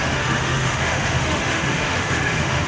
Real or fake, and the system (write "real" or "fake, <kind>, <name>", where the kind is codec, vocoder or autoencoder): fake, autoencoder, DAC-VAE